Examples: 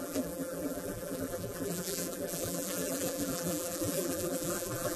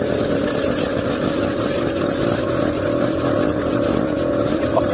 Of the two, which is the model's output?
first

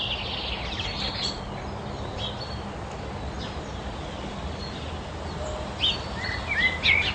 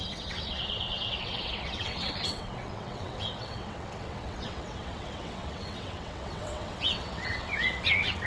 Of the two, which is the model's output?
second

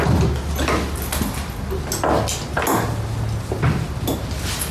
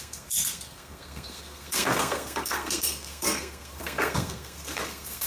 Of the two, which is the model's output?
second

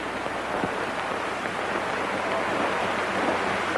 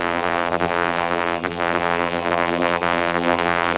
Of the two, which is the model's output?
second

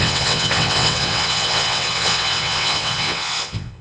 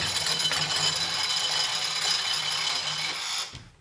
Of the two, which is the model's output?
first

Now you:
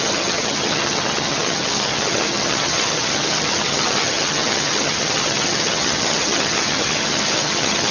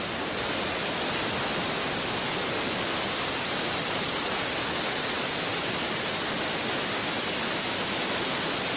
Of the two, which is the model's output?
first